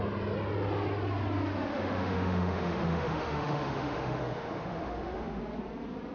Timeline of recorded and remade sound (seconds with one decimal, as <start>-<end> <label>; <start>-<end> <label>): 0.0-1.7 recorded; 1.7-5.4 remade; 5.4-6.1 recorded